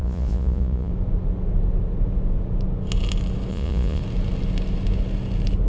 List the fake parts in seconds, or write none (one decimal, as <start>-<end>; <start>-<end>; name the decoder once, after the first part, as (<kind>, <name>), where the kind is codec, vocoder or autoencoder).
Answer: 0.0-0.9 (vocoder, Vocos); 3.5-4.0